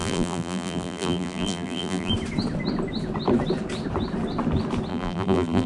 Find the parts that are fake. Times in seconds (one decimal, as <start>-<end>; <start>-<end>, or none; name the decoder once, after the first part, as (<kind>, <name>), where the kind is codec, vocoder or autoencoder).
0.0-2.1 (vocoder, BigVGAN v2); 4.9-5.7